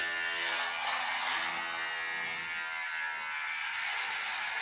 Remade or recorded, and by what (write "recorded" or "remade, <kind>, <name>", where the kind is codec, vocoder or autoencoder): recorded